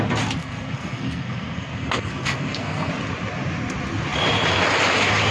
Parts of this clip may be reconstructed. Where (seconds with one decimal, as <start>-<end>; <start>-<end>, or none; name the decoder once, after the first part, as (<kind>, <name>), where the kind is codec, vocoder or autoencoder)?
0.4-2.9 (codec, SNAC)